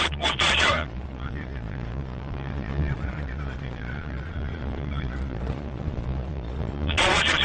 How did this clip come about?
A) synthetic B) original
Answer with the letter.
A